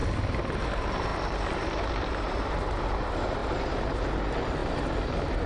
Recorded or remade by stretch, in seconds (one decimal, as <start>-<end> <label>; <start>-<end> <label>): 0.0-0.6 recorded; 0.6-5.5 remade